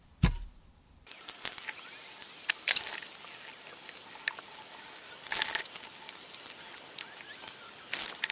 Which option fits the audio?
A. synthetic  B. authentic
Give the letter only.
B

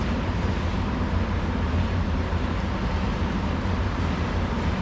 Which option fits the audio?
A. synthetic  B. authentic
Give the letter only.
A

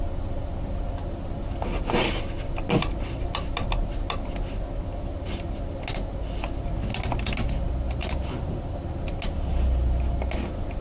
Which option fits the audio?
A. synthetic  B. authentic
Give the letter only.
B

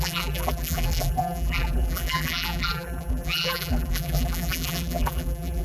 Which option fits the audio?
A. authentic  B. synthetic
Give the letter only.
B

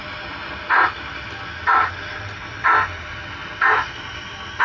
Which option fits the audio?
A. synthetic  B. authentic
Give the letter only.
B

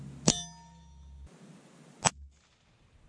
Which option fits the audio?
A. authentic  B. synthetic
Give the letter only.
A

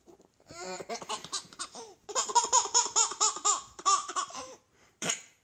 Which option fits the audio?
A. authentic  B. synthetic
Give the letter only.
B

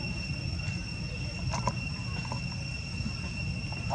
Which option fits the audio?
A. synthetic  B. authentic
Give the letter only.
B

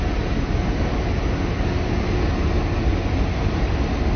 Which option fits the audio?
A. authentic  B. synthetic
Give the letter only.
A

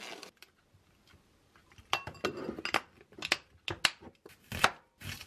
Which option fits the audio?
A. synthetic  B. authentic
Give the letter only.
B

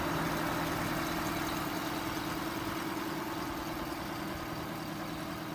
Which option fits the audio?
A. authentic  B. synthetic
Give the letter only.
A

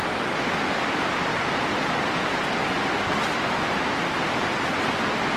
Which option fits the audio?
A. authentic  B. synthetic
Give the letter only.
A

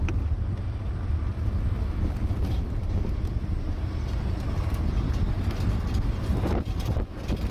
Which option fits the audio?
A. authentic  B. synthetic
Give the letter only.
A